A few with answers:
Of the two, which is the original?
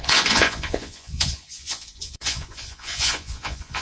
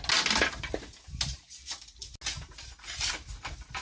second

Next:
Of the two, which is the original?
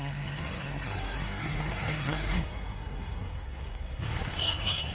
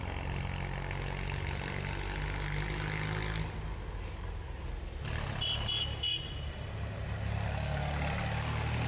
second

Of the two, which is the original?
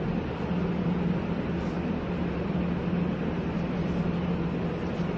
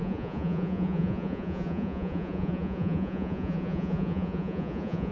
first